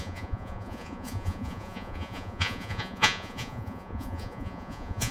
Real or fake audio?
fake